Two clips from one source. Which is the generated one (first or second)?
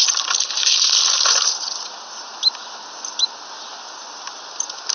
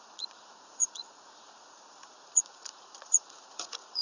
second